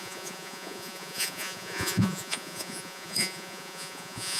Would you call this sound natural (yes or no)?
no